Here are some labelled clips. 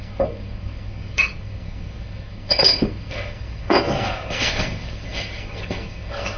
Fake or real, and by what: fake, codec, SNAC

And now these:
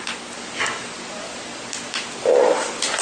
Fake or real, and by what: real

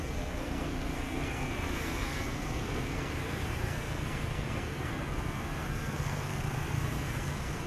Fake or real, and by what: fake, codec, SNAC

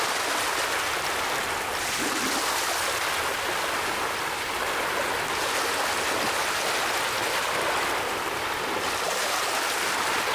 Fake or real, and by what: real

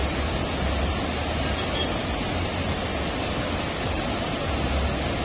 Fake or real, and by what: real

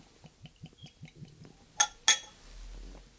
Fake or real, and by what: real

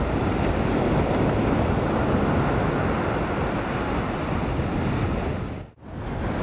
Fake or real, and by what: real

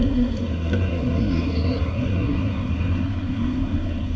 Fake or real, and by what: fake, codec, SNAC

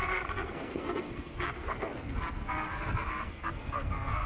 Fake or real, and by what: fake, codec, SNAC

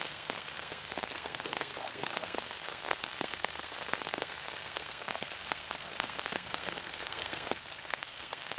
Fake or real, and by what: fake, codec, SNAC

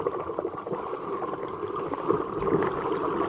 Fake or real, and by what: real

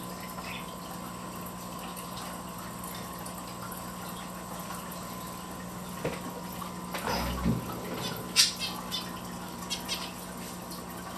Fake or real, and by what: real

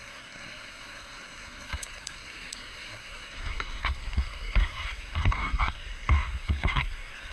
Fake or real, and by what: fake, codec, SNAC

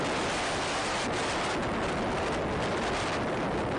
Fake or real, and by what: real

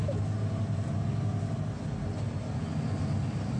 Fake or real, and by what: real